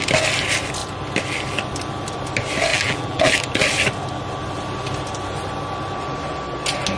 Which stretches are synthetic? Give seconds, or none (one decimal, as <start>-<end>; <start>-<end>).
2.7-3.3